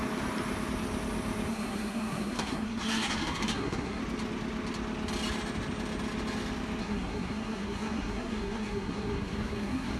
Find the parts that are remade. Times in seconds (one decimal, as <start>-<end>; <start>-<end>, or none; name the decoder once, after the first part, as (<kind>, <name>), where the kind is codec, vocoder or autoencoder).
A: 1.5-4.0 (codec, SNAC); 6.8-10.0